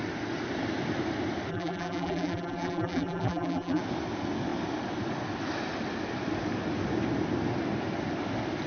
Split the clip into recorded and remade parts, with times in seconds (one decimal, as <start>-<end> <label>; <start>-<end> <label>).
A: 0.0-1.5 recorded; 1.5-3.8 remade; 3.8-8.7 recorded